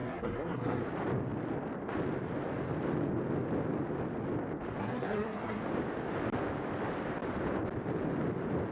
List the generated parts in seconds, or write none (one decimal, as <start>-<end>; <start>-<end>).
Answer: 0.0-0.8; 4.8-5.6